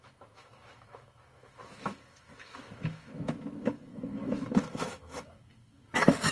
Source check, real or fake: fake